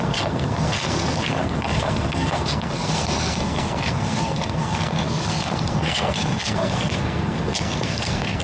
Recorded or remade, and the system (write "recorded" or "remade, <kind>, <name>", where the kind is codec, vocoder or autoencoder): remade, codec, SNAC